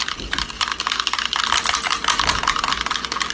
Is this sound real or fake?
fake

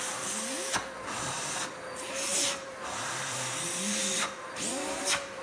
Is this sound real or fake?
fake